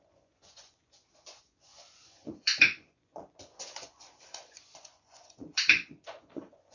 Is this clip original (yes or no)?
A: no